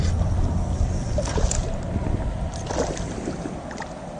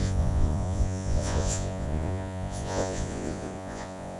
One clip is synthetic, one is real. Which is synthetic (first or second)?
second